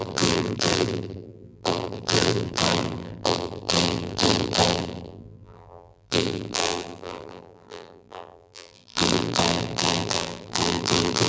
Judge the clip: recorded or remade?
remade